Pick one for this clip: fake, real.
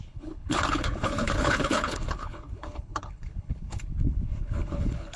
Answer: fake